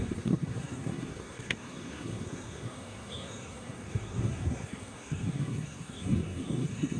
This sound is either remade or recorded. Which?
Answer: remade